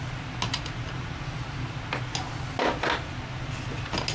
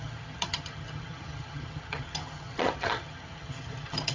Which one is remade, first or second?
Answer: second